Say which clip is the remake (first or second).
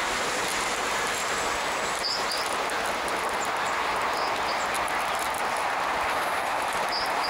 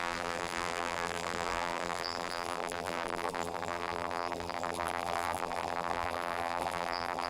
second